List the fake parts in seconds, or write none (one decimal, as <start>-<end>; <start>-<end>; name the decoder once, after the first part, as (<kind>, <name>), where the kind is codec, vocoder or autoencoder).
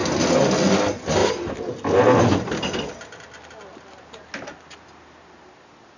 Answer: none